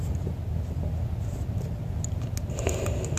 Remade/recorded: recorded